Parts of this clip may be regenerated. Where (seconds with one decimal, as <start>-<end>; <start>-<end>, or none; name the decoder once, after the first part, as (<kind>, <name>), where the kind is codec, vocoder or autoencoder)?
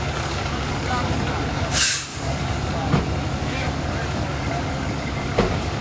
0.0-5.8 (codec, DAC)